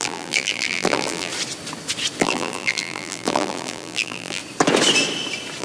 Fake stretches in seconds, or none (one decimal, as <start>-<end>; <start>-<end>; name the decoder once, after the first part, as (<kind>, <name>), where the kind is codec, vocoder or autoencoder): 0.0-1.3 (vocoder, BigVGAN v2); 2.2-4.4